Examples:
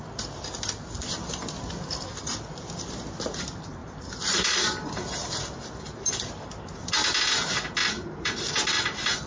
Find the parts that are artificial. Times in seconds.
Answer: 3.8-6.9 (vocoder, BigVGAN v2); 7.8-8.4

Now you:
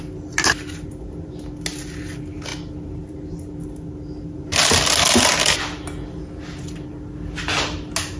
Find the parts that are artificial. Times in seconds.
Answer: none

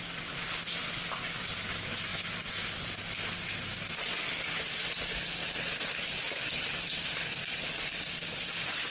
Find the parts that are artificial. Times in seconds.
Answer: 6.2-8.5 (vocoder, BigVGAN v2)

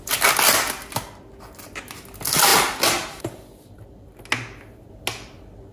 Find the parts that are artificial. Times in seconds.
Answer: none